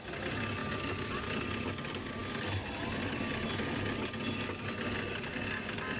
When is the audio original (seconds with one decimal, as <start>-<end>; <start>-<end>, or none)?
0.0-6.0